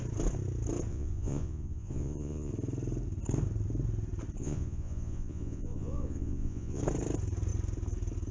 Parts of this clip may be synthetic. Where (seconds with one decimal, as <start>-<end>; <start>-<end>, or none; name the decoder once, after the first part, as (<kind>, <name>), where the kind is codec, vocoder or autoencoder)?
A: 0.9-2.5 (vocoder, Vocos); 4.4-6.8